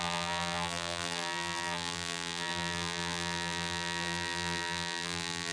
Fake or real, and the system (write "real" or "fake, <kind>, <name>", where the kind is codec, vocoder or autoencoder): fake, vocoder, BigVGAN v2